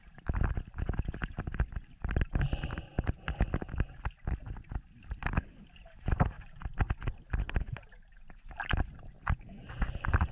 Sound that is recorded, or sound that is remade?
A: recorded